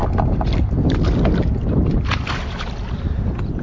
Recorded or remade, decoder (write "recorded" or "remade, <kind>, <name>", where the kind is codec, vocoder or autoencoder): recorded